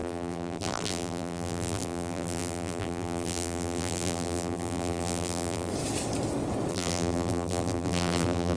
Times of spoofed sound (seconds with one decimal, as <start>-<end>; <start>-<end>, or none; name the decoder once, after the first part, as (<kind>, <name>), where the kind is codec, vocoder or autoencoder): 0.0-5.7 (vocoder, BigVGAN v2); 6.7-8.6